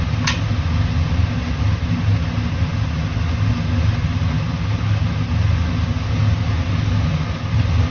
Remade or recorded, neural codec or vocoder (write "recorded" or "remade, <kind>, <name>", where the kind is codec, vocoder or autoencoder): recorded